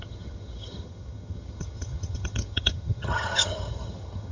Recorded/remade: remade